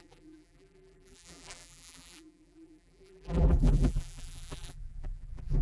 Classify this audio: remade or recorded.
remade